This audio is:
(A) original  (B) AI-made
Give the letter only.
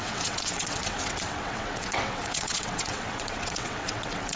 B